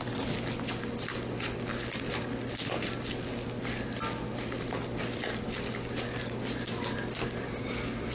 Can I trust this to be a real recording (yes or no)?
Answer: yes